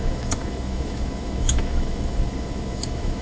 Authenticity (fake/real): fake